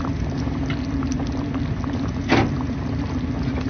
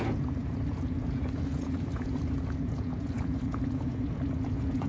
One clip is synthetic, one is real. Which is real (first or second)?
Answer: first